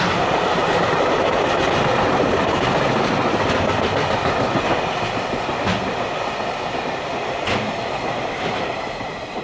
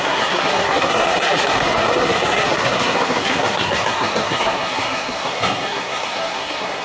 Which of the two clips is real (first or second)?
first